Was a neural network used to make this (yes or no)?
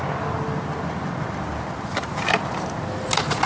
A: no